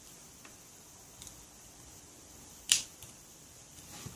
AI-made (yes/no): yes